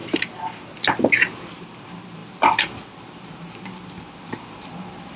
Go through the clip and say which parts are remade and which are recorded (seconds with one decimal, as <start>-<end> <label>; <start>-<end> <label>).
0.0-1.6 recorded; 1.6-5.2 remade